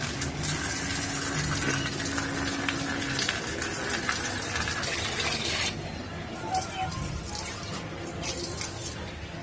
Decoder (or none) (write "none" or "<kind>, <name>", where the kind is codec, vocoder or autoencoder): none